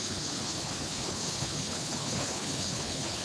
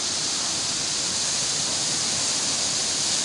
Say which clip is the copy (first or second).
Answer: first